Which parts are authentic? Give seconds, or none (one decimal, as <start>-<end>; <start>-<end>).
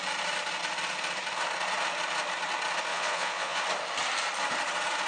0.0-2.9; 3.6-5.1